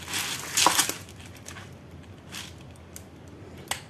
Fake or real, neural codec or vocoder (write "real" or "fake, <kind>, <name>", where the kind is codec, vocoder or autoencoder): real